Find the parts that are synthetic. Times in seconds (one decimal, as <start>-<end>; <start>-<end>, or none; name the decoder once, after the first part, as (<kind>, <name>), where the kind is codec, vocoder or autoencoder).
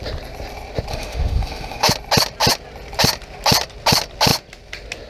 0.9-1.9 (autoencoder, DAC-VAE)